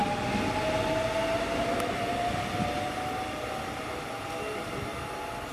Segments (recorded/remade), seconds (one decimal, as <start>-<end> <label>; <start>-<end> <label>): 0.0-5.5 recorded